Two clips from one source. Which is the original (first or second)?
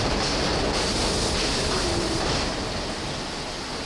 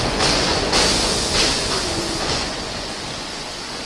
first